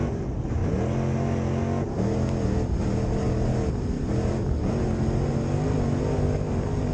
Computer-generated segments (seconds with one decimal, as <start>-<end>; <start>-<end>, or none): none